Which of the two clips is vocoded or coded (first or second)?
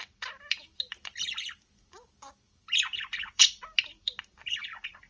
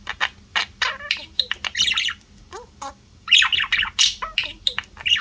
first